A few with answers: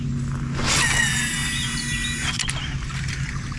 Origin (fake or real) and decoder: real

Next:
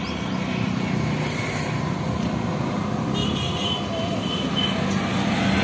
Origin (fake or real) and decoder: real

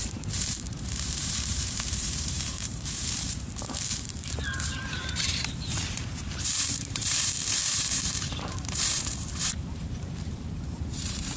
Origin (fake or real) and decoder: fake, vocoder, BigVGAN v2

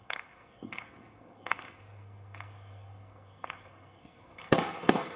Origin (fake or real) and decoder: fake, codec, SNAC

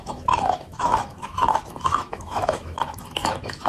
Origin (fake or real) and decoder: fake, autoencoder, DAC-VAE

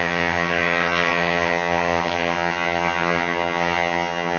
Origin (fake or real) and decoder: fake, vocoder, HiFi-GAN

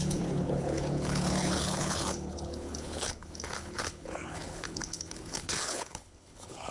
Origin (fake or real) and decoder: fake, codec, HILCodec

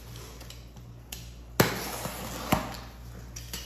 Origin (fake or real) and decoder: real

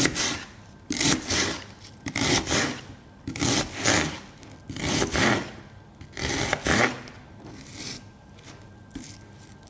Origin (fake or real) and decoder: real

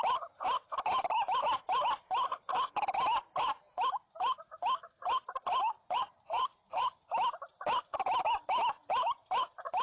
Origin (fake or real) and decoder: real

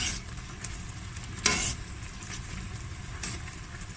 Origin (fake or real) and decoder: fake, vocoder, BigVGAN v2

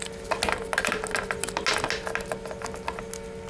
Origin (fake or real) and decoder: real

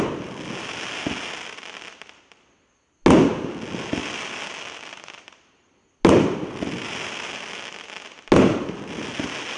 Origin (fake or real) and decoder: real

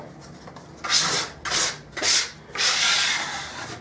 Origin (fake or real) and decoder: real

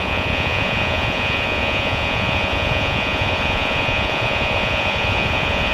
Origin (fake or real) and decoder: fake, vocoder, Vocos